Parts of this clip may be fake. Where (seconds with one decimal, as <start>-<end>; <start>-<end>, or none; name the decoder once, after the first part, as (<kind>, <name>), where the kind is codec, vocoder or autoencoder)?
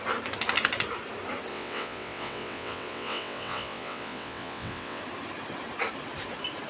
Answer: 1.5-5.0 (vocoder, WaveNeXt)